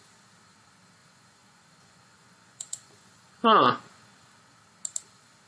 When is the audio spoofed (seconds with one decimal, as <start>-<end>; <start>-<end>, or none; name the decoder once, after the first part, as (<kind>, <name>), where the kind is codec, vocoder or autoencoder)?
1.0-4.3 (vocoder, Vocos)